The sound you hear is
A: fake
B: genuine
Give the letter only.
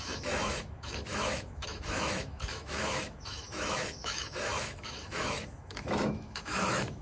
A